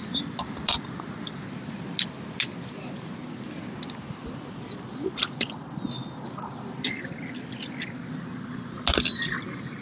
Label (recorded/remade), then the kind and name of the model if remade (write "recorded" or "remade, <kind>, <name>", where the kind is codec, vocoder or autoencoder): recorded